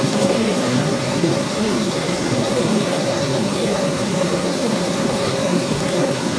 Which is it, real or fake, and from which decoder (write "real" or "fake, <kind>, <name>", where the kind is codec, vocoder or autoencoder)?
fake, codec, SNAC